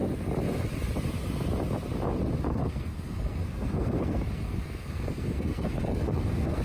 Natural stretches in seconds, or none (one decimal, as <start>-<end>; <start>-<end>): 0.0-2.5